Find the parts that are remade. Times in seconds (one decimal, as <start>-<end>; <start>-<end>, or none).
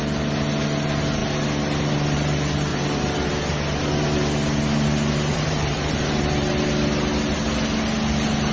2.7-3.3; 5.3-6.5